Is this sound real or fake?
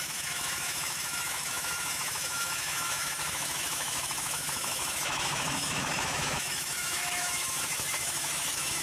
fake